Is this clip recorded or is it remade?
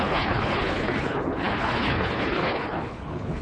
remade